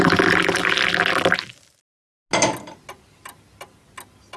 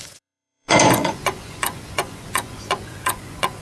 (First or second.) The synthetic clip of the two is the second